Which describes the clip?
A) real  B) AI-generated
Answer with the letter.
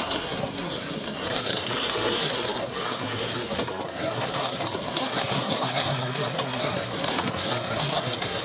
B